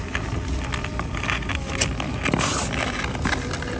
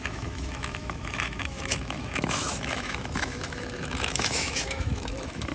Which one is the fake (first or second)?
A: second